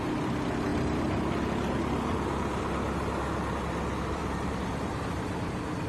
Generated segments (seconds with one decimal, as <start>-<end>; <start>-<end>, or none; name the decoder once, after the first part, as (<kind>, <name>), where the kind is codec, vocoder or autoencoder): 4.2-5.0 (vocoder, BigVGAN v2)

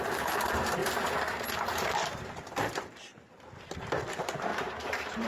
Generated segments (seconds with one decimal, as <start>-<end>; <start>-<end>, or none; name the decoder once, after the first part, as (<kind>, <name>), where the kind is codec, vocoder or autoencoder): 0.0-3.1 (vocoder, BigVGAN v2); 4.1-5.3

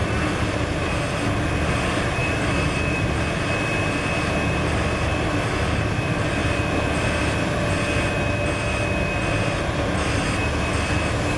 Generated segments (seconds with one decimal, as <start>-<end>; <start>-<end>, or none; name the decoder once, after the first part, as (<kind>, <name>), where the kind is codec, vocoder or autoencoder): 0.0-0.9 (vocoder, BigVGAN v2); 2.2-3.1; 6.4-6.9